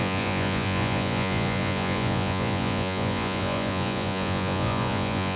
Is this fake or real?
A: fake